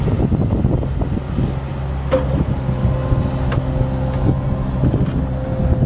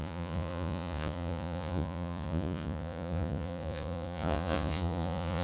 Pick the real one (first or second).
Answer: first